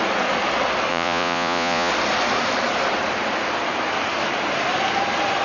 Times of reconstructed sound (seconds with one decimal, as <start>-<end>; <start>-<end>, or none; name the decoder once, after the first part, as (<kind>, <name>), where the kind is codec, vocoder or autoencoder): 0.9-1.9 (vocoder, Vocos)